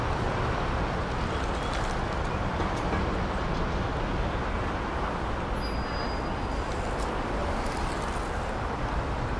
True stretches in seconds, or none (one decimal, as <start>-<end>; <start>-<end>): 0.0-9.4